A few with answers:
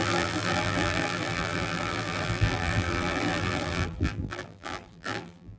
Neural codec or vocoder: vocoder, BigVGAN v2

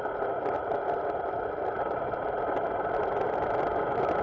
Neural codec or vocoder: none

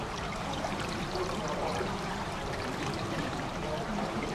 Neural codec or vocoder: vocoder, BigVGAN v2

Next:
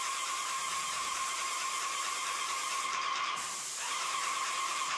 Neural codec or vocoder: vocoder, BigVGAN v2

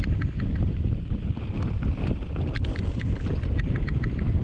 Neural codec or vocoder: vocoder, BigVGAN v2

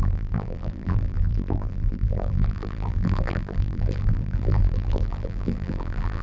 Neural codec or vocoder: vocoder, BigVGAN v2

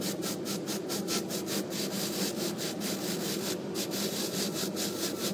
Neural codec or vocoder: none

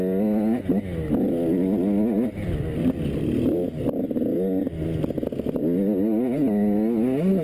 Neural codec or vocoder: none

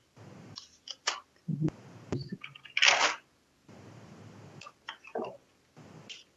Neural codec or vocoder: vocoder, BigVGAN v2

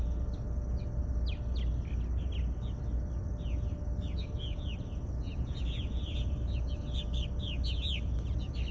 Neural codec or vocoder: none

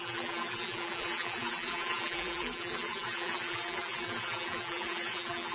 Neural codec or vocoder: vocoder, BigVGAN v2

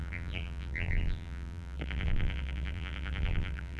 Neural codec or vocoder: vocoder, BigVGAN v2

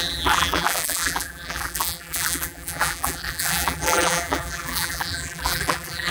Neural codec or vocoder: vocoder, BigVGAN v2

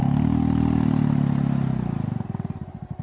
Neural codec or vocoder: none